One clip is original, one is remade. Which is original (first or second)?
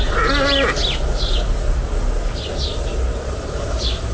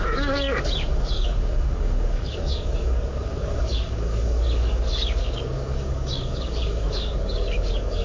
first